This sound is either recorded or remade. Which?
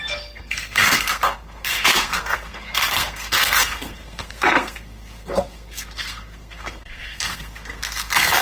remade